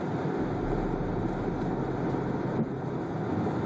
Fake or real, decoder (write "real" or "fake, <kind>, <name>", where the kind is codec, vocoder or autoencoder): real